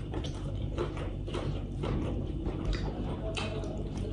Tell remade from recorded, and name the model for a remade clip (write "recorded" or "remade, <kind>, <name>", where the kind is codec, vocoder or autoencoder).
remade, vocoder, BigVGAN v2